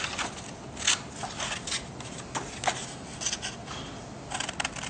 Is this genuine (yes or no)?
yes